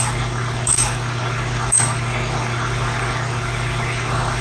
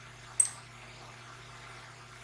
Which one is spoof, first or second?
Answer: first